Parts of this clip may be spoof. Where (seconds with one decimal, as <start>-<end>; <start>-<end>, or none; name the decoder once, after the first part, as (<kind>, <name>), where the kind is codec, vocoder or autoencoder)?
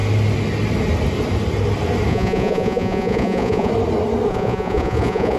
2.1-3.7 (vocoder, Vocos); 4.3-5.4